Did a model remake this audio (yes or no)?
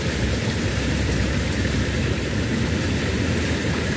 yes